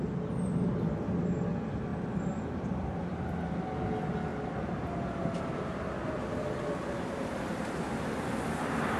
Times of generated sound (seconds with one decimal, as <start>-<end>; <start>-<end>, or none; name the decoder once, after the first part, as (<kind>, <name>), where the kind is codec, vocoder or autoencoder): none